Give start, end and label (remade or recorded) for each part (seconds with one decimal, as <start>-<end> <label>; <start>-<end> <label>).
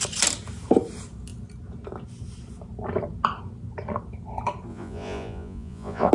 0.0-4.7 recorded; 4.7-6.1 remade